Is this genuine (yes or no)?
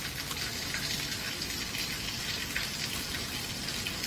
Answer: yes